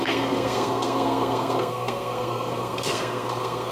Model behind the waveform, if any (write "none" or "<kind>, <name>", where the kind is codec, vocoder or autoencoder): codec, SNAC